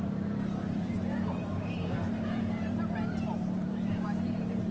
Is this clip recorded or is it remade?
remade